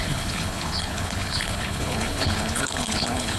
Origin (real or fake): fake